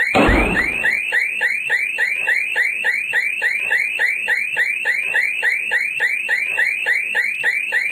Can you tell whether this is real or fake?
real